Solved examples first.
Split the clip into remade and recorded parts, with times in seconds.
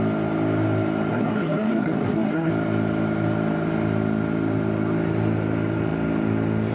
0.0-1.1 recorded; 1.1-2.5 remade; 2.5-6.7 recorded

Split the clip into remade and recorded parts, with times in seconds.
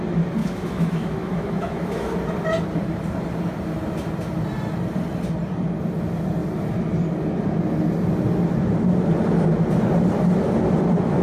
0.0-0.4 recorded; 0.4-2.1 remade; 2.1-11.2 recorded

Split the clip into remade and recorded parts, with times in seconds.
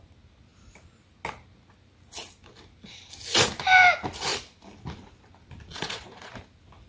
0.0-5.7 recorded; 5.7-6.3 remade; 6.3-6.9 recorded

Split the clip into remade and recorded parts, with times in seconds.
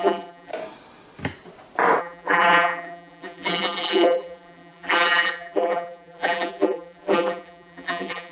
0.0-0.5 remade; 0.5-2.0 recorded; 2.0-8.3 remade